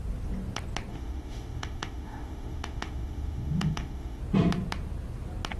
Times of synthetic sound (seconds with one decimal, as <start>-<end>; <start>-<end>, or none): 0.9-4.2